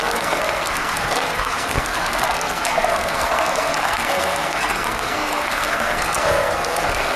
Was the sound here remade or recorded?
remade